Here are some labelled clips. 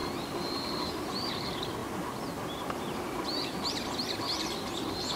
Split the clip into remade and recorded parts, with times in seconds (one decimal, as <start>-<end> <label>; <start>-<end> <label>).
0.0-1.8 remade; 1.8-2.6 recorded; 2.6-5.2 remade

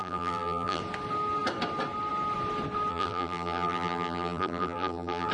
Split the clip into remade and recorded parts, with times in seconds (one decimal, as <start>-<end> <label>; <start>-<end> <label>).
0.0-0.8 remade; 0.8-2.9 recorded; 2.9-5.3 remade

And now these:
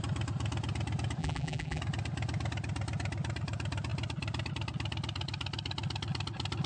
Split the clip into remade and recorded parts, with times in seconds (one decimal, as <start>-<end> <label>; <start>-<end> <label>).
0.0-1.2 recorded; 1.2-1.8 remade; 1.8-6.7 recorded

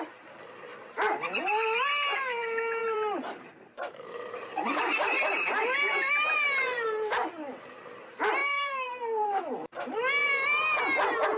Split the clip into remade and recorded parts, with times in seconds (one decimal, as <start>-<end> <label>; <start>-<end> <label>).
0.0-2.8 recorded; 2.8-7.3 remade; 7.3-8.4 recorded; 8.4-9.4 remade; 9.4-10.2 recorded; 10.2-10.8 remade; 10.8-11.4 recorded